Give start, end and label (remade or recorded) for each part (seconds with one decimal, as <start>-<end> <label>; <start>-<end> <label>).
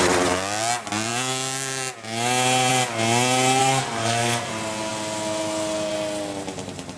0.0-3.6 recorded; 3.6-4.5 remade; 4.5-7.0 recorded